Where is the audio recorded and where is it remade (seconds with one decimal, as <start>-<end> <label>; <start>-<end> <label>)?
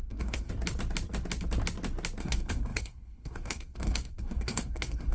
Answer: 0.0-0.5 remade; 0.5-2.2 recorded; 2.2-5.1 remade